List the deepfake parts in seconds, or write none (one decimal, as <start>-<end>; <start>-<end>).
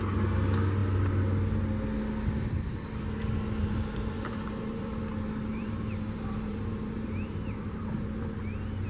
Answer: 3.6-5.0; 5.5-8.4